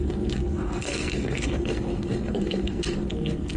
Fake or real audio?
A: fake